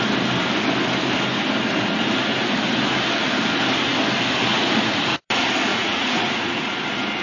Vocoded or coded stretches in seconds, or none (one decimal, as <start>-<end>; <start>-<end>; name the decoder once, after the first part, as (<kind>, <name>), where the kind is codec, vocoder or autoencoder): 4.5-5.3 (vocoder, Vocos); 5.7-6.7